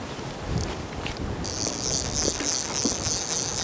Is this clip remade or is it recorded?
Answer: recorded